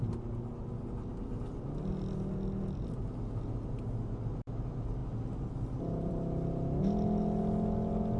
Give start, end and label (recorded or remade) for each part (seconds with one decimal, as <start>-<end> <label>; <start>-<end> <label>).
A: 0.0-8.2 recorded